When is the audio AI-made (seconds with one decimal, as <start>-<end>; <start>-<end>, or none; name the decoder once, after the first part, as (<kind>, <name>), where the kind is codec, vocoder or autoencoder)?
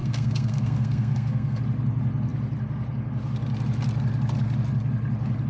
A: 0.0-1.6 (codec, SNAC)